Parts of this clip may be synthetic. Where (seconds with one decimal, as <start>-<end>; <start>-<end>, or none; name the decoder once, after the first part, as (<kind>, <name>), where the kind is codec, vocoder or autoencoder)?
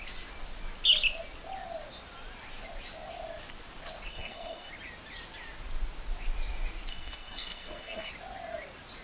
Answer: 4.1-4.7 (codec, SNAC); 6.9-8.1